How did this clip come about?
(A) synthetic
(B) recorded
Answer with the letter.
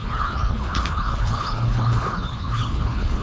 A